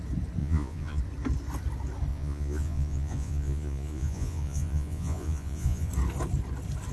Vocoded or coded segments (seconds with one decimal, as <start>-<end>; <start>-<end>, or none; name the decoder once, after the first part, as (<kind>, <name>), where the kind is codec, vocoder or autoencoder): 0.4-1.0 (vocoder, Vocos); 2.1-5.9